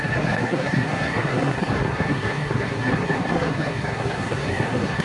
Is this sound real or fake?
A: fake